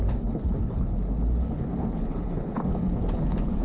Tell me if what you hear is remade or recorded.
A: remade